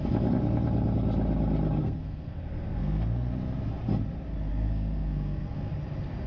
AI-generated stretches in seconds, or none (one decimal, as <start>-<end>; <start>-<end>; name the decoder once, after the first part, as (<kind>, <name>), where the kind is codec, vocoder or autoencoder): 1.8-3.3 (codec, SNAC); 4.5-5.7